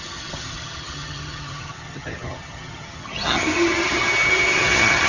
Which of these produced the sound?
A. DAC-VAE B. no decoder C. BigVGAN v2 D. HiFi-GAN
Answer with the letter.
D